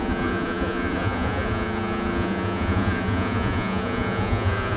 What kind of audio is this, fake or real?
fake